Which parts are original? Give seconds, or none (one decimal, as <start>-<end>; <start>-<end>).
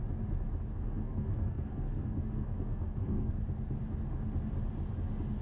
0.0-0.7; 3.3-5.4